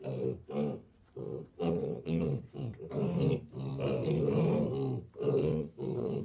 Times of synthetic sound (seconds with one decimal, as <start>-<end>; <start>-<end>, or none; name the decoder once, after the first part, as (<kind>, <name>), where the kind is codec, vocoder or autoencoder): 0.8-2.9 (vocoder, WaveNeXt); 5.4-6.2